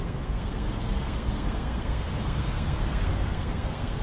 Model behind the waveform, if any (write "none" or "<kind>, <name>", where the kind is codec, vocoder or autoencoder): codec, SNAC